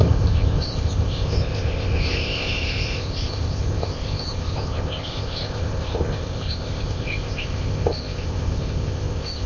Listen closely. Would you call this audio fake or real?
fake